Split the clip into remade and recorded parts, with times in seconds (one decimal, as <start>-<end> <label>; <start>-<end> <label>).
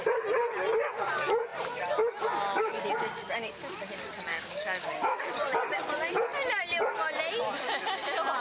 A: 0.0-4.3 recorded; 4.3-5.3 remade; 5.3-8.4 recorded